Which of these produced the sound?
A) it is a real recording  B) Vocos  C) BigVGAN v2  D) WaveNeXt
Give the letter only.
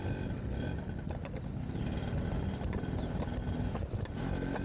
A